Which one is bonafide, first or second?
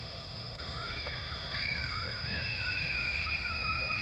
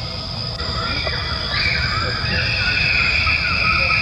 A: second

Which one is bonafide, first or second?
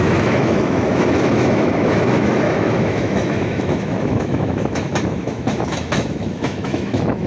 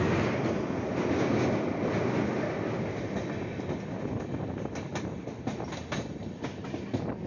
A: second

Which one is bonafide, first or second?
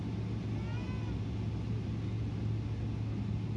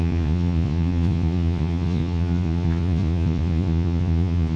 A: first